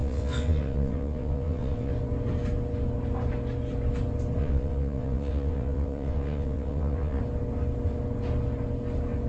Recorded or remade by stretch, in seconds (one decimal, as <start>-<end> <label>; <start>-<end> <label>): 0.0-1.9 remade; 1.9-4.4 recorded; 4.4-7.2 remade; 7.2-9.3 recorded